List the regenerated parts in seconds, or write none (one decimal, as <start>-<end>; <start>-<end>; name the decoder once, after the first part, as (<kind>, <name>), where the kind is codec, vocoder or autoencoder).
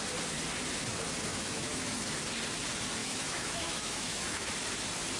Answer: 1.3-2.0 (autoencoder, DAC-VAE); 3.0-4.5